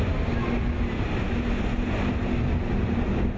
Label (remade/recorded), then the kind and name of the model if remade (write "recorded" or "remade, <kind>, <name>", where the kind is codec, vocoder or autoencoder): recorded